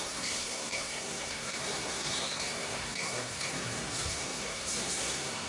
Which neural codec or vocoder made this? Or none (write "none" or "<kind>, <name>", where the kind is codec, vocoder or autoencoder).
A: codec, SNAC